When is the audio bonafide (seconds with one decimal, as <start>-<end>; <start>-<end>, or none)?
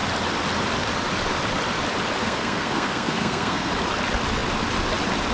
0.0-2.2; 3.7-5.3